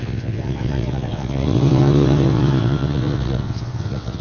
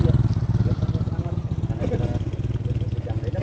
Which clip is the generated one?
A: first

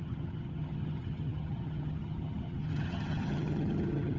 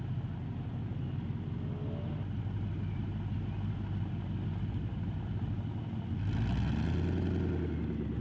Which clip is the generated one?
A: first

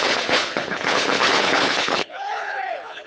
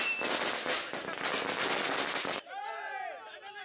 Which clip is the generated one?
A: first